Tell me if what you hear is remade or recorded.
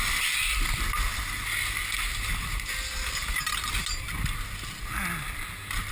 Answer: recorded